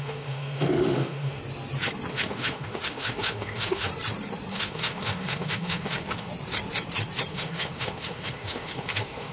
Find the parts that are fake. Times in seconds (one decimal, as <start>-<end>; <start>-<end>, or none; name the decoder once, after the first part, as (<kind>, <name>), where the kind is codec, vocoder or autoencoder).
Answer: 0.0-1.4 (autoencoder, DAC-VAE); 2.1-3.9; 4.5-6.3; 7.3-9.3